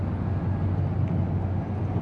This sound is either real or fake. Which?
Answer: real